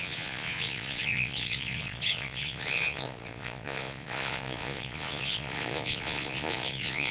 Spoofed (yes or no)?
yes